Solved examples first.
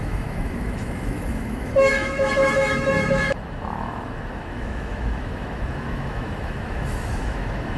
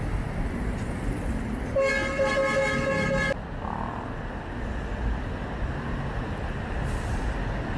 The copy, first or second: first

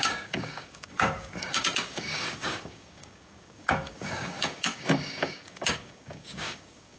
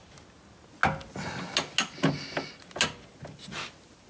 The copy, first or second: first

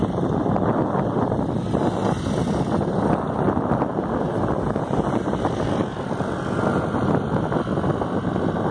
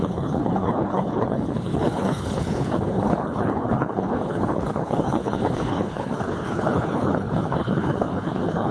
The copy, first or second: second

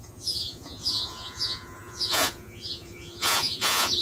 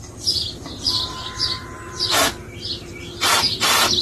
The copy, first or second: first